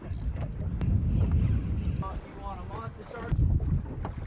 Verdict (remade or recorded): recorded